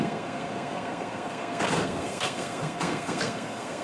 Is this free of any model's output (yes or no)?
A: no